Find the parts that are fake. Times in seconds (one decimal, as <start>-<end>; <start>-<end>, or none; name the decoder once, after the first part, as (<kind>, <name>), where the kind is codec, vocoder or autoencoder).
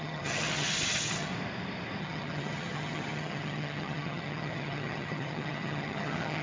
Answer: 0.0-1.3 (vocoder, HiFi-GAN); 2.0-6.4